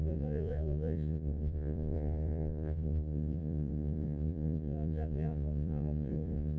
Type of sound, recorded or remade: remade